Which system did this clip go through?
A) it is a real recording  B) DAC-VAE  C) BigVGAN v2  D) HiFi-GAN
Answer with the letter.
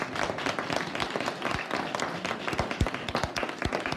A